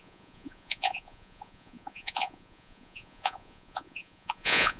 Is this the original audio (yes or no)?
no